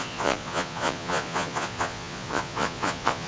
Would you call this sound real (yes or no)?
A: no